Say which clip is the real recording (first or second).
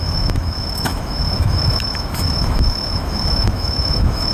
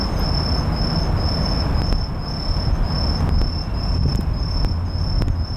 second